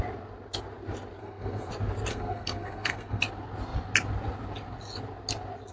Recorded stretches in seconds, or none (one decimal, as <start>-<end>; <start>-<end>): 0.0-1.2; 1.7-2.1; 3.2-5.7